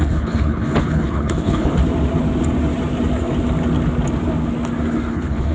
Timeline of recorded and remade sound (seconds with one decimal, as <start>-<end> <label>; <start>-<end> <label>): 0.0-1.8 remade; 1.8-5.1 recorded; 5.1-5.5 remade